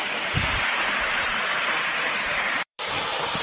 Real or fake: fake